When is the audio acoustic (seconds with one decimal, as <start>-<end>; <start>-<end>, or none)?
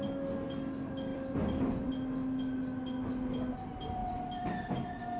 0.0-1.1; 1.9-4.0; 4.7-5.2